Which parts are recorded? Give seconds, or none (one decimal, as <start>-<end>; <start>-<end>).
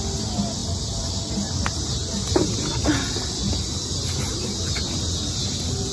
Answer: 0.0-5.9